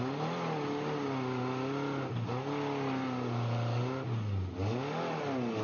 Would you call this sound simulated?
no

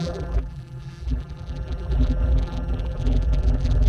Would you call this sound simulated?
yes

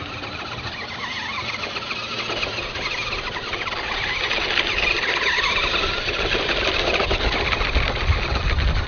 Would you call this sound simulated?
no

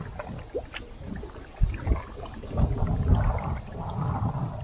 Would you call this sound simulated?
no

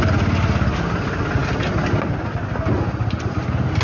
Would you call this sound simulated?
no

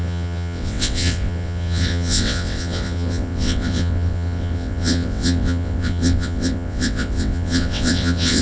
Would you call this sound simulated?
yes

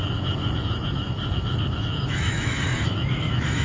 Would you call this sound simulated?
yes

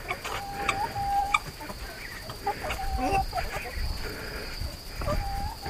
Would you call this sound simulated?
no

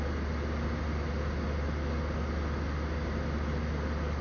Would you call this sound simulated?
no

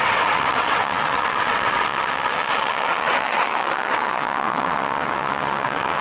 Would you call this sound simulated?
yes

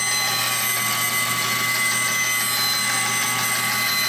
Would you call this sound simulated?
no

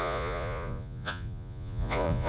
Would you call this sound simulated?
yes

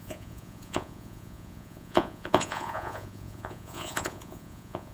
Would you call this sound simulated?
yes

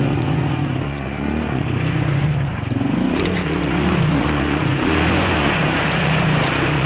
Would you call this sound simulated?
yes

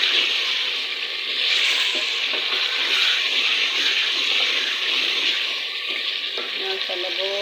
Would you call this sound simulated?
no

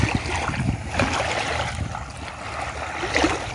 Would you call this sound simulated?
no